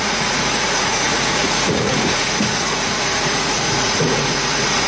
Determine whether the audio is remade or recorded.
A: remade